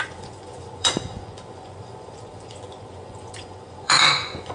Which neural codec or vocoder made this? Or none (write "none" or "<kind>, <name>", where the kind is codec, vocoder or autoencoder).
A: vocoder, Vocos